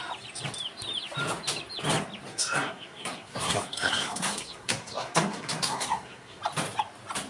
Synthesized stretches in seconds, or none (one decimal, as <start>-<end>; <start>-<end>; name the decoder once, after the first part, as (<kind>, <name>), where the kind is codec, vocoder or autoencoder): 2.3-6.4 (codec, SNAC)